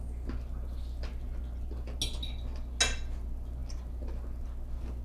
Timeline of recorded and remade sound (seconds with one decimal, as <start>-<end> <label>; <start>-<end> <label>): 0.0-5.0 recorded